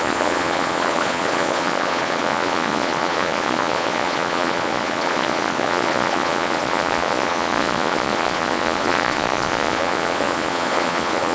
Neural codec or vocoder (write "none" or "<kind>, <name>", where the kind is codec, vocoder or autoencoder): vocoder, Vocos